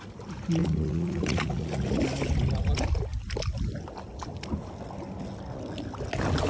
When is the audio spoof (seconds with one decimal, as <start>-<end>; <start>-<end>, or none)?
0.6-2.0